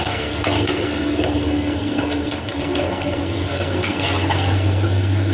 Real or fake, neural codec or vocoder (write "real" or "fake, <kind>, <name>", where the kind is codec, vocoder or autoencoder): fake, codec, SNAC